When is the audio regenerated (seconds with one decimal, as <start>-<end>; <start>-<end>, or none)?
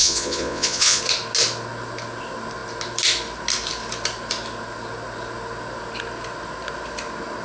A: 0.0-1.0